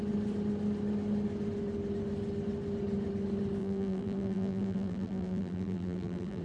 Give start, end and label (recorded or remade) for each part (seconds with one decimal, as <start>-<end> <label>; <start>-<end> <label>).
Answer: 0.0-3.6 recorded; 3.6-6.4 remade